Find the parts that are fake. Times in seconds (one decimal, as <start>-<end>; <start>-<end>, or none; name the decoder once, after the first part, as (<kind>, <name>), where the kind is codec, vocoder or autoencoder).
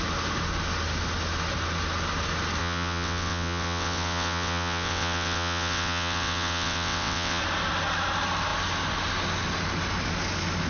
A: 2.6-7.4 (vocoder, WaveNeXt)